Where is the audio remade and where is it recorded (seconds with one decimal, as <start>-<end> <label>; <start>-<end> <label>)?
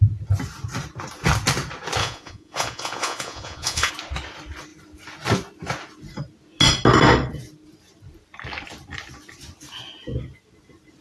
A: 0.0-2.0 recorded; 2.0-3.9 remade; 3.9-11.0 recorded